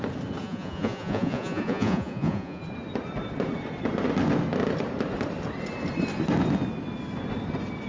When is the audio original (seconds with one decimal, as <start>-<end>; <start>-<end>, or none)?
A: 0.0-0.4; 2.6-7.9